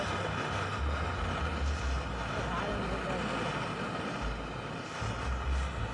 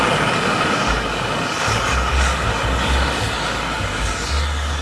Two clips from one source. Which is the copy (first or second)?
second